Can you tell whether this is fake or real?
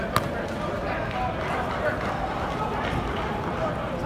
real